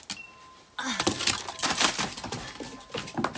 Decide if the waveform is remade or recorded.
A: recorded